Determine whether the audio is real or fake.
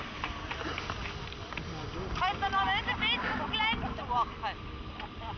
real